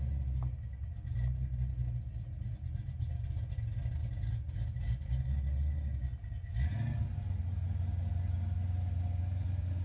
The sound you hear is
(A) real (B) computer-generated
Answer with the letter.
A